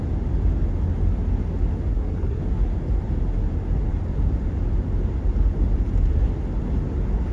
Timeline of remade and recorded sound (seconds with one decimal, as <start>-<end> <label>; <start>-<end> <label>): 0.0-1.9 recorded; 1.9-2.4 remade; 2.4-7.3 recorded